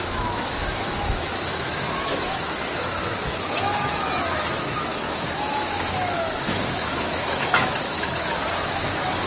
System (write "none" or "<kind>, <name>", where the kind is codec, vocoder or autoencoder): autoencoder, DAC-VAE